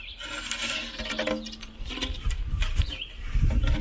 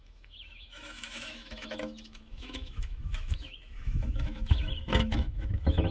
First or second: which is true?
first